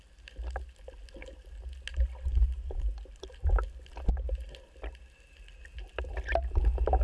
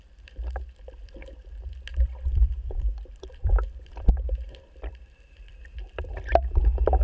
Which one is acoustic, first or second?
first